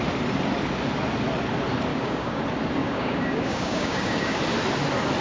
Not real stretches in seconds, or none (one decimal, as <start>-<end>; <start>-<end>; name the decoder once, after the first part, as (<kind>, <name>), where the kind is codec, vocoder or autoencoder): 1.9-2.4 (codec, DAC); 2.8-4.4